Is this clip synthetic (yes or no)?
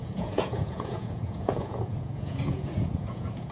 yes